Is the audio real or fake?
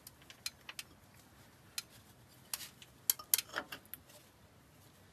real